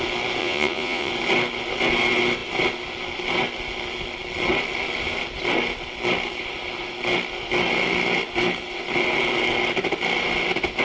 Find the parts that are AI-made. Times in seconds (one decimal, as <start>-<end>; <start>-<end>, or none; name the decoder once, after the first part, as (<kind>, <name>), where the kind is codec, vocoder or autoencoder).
0.4-1.1 (vocoder, Vocos)